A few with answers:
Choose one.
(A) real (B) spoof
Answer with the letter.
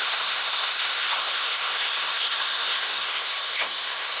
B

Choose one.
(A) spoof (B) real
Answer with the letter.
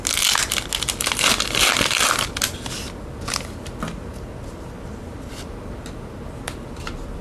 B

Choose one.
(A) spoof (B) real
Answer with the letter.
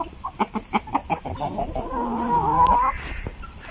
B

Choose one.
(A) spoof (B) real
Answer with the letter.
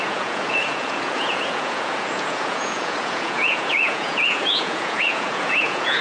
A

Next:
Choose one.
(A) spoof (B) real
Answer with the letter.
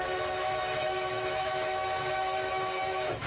A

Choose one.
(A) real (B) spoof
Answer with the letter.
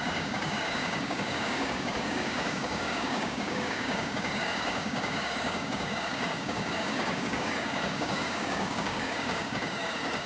B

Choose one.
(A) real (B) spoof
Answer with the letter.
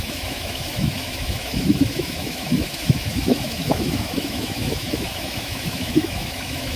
B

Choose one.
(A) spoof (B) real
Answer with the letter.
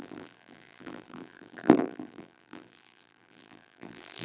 A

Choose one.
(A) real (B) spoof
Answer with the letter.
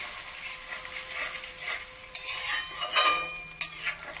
A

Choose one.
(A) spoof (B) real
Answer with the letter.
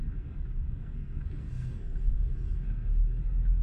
A